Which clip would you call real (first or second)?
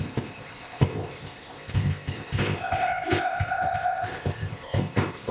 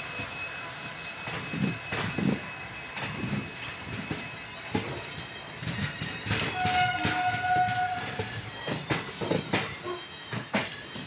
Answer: second